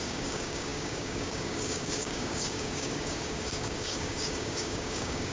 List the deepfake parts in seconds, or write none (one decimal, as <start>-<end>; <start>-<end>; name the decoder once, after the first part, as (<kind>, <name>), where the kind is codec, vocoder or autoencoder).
0.0-5.3 (codec, DAC)